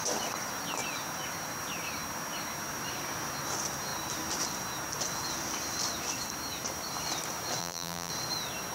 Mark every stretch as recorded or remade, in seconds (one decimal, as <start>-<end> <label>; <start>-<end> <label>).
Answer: 0.0-7.6 recorded; 7.6-8.1 remade; 8.1-8.7 recorded